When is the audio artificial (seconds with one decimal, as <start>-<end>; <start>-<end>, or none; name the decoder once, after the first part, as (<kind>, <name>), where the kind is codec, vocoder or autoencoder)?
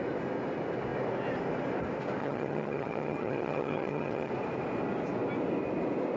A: 2.2-4.3 (vocoder, HiFi-GAN)